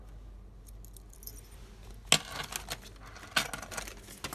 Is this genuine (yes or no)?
yes